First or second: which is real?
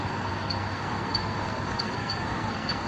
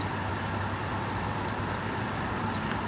second